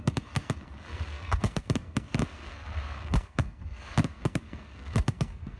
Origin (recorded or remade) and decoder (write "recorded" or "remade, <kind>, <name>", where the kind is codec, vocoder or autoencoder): remade, codec, SNAC